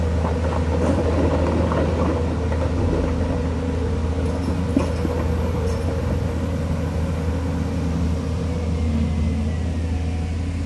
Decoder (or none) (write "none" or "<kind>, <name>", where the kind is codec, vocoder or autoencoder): none